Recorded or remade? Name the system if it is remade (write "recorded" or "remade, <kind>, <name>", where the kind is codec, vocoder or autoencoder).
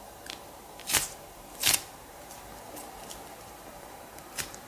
remade, vocoder, BigVGAN v2